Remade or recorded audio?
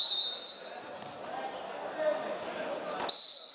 recorded